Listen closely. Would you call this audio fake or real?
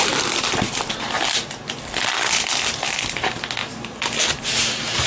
real